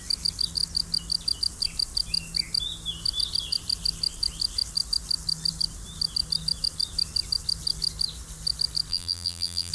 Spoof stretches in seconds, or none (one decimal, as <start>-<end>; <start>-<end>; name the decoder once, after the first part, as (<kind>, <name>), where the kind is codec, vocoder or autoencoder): 8.9-9.7 (vocoder, BigVGAN v2)